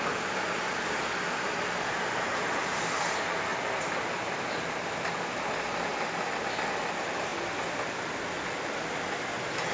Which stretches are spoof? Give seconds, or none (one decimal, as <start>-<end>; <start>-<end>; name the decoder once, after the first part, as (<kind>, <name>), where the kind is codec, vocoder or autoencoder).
none